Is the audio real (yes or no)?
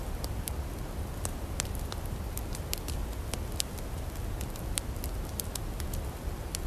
yes